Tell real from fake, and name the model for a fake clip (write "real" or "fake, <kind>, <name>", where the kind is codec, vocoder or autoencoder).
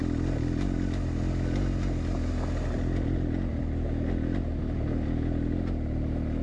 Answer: real